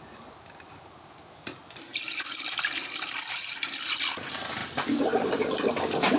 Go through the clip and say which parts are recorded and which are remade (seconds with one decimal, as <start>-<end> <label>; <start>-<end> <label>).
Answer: 0.0-6.2 recorded